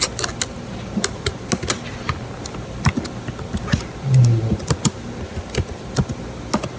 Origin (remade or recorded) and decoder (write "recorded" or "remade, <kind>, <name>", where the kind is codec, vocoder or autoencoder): recorded